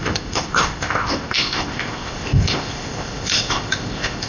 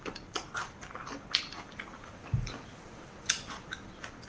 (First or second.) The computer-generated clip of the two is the first